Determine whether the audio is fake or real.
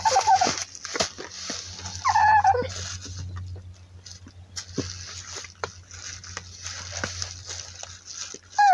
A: real